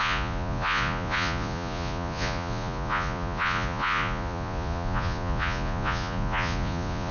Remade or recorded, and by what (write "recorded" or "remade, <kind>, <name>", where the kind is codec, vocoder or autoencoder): remade, vocoder, Vocos